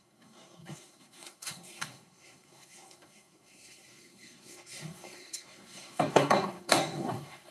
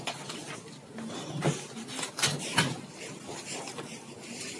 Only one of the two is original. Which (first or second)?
second